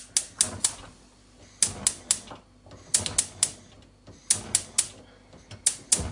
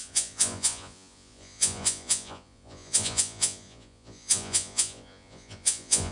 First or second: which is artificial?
second